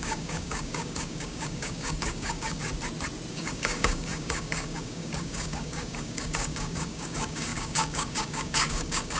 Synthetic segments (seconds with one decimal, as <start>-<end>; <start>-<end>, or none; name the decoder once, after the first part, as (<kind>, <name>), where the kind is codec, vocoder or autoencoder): 0.0-2.7 (codec, DAC); 3.3-9.2